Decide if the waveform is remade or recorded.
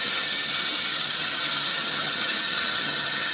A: remade